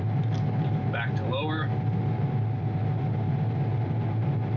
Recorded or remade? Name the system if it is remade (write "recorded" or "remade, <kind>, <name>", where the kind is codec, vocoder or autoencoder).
recorded